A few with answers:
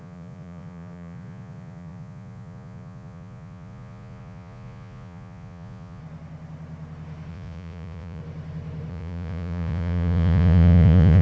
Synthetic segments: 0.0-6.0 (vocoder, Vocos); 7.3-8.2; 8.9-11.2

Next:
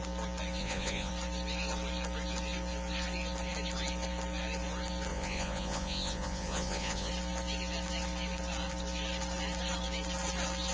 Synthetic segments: 0.6-1.1 (vocoder, Vocos); 5.1-7.1

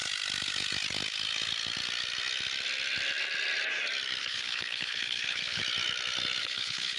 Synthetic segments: 4.2-5.6 (codec, HILCodec); 6.4-7.0